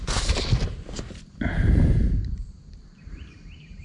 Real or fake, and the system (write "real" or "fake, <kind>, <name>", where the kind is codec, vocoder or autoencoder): fake, vocoder, BigVGAN v2